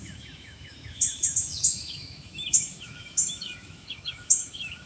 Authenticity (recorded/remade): remade